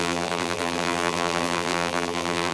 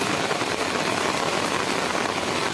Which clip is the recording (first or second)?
second